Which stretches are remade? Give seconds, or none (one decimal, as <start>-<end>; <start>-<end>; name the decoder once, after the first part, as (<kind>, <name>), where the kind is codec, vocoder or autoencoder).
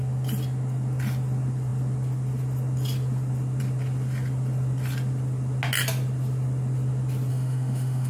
7.3-8.1 (autoencoder, DAC-VAE)